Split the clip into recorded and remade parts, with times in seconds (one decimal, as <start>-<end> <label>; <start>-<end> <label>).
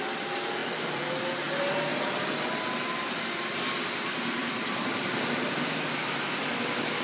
0.0-0.6 recorded; 0.6-1.2 remade; 1.2-1.9 recorded; 1.9-6.0 remade; 6.0-7.0 recorded